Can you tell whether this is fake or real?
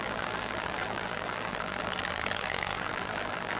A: fake